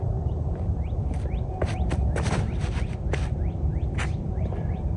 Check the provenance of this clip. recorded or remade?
remade